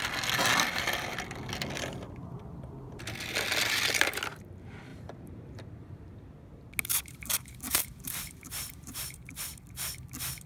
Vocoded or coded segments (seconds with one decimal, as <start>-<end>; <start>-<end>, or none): 4.9-6.0; 6.9-9.4